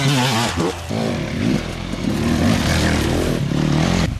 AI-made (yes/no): no